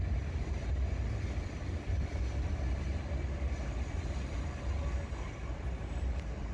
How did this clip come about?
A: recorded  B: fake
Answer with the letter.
A